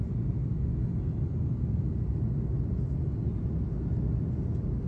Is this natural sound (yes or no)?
yes